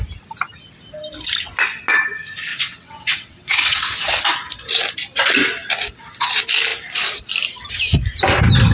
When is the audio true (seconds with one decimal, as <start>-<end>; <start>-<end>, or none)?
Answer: 0.0-2.5; 4.2-8.7